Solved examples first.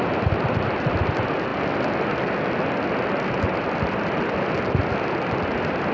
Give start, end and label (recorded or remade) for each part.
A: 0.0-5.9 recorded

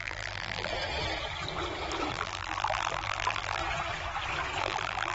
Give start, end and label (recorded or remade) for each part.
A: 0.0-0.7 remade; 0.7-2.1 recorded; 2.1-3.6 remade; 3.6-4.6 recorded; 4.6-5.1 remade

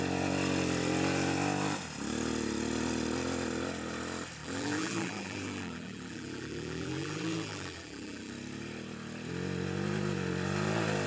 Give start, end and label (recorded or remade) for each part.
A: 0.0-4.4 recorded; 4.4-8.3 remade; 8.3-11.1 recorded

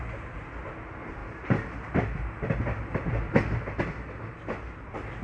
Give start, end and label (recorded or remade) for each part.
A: 0.0-5.2 recorded

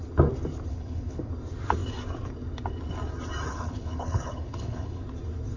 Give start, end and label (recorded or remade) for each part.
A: 0.0-0.7 recorded; 0.7-1.3 remade; 1.3-3.5 recorded; 3.5-5.0 remade; 5.0-5.6 recorded

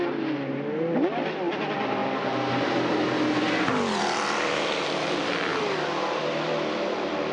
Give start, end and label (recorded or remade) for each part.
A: 0.0-2.0 remade; 2.0-3.8 recorded; 3.8-5.5 remade; 5.5-6.2 recorded; 6.2-7.3 remade